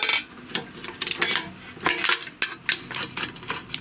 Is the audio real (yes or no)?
yes